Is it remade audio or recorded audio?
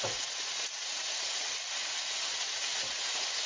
remade